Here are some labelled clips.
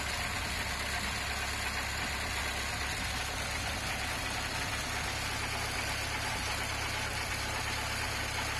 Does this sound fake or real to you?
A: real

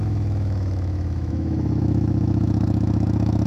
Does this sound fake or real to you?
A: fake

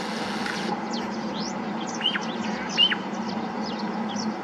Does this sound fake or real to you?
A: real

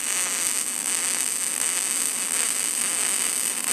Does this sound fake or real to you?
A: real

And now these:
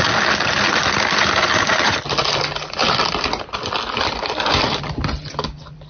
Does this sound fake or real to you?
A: real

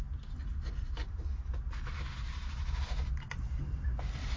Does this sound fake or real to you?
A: real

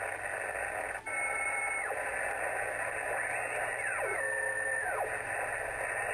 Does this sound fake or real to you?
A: real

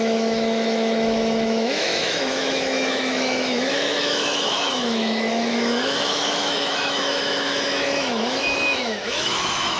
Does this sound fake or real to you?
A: fake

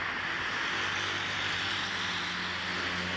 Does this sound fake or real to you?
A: real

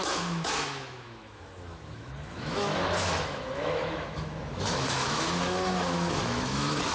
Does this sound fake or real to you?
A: fake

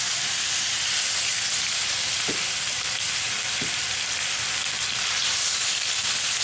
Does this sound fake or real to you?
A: real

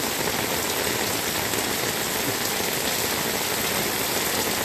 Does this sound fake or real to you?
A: real